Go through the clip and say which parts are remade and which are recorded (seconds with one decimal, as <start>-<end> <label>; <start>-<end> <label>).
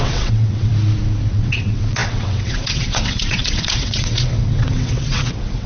0.0-0.7 remade; 0.7-1.3 recorded; 1.3-5.7 remade